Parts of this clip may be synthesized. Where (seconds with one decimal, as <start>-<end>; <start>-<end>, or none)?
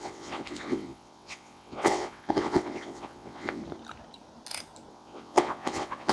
0.0-3.6; 4.9-6.1